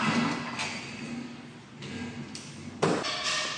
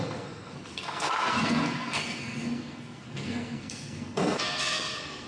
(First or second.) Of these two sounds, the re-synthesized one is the second